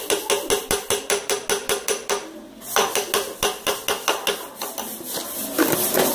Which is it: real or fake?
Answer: real